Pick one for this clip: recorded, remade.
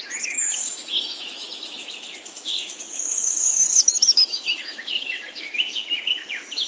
remade